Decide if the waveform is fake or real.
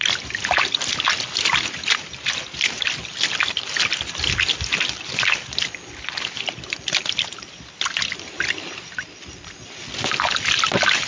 real